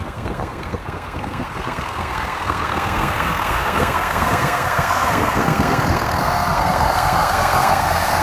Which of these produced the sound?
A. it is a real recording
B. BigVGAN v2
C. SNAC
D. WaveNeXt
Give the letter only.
C